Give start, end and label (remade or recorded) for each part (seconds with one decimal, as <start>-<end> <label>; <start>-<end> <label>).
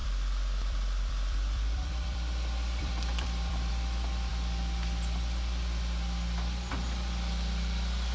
0.0-3.7 remade; 3.7-8.1 recorded